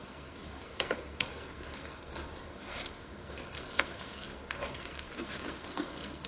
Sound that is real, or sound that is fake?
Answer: fake